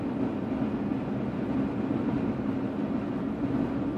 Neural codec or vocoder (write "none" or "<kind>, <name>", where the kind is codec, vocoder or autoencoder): none